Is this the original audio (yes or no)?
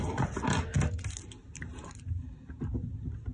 yes